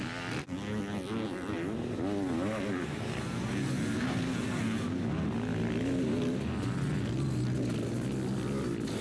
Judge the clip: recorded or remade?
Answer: recorded